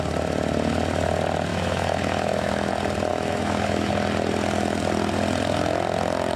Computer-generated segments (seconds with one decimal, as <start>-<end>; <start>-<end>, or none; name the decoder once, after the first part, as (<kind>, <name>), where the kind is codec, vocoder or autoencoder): 1.5-2.7 (autoencoder, DAC-VAE); 3.1-3.9

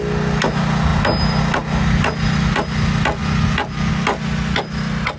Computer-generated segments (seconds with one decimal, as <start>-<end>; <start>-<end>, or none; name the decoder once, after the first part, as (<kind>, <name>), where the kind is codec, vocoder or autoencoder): none